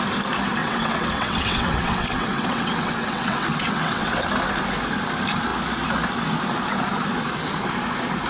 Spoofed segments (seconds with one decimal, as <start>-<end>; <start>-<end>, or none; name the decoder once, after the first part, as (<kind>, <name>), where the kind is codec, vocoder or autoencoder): 0.6-4.2 (vocoder, WaveNeXt)

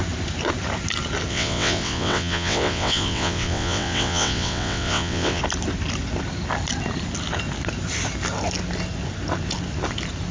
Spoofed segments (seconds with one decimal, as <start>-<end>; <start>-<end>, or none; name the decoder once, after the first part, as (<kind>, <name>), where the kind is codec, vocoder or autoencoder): 1.3-5.4 (vocoder, WaveNeXt)

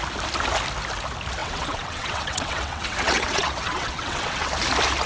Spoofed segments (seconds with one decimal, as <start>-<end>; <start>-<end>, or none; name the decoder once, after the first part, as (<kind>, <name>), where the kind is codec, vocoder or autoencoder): 1.4-4.5 (vocoder, WaveNeXt)